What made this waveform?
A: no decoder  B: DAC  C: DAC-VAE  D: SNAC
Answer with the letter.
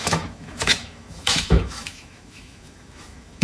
C